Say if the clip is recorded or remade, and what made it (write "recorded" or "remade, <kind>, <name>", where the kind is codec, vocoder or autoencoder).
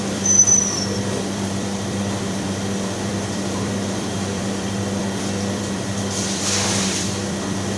remade, vocoder, BigVGAN v2